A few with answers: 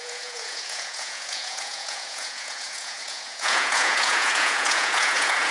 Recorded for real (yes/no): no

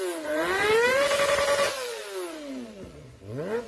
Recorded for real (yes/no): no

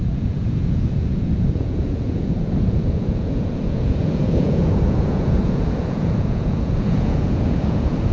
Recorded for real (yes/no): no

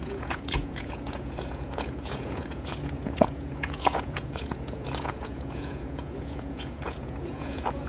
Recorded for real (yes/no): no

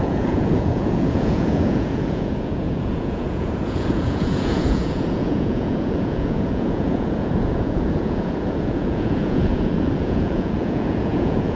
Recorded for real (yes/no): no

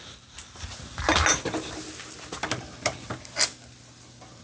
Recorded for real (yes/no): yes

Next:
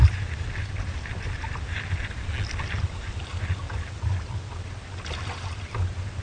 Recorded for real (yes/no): yes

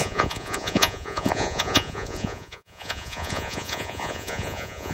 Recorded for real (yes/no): no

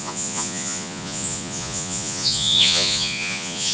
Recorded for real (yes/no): no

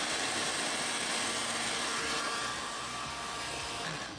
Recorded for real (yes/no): yes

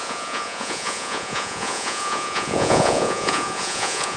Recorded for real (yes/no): no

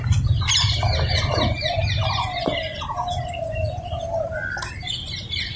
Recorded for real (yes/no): yes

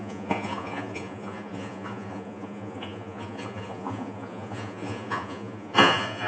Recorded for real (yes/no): no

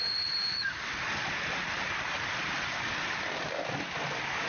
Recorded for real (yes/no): yes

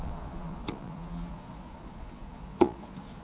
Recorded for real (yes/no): no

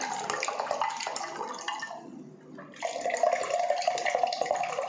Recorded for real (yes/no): yes